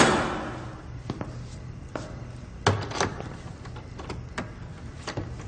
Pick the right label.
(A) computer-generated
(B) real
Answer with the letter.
B